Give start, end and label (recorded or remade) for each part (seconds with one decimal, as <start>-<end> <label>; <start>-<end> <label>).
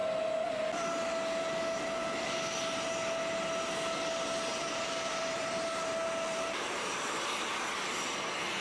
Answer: 0.0-4.5 recorded; 4.5-7.2 remade; 7.2-8.6 recorded